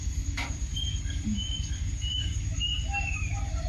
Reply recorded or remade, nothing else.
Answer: remade